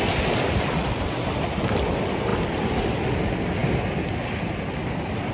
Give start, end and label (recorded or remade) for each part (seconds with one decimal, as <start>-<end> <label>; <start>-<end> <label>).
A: 0.0-5.3 recorded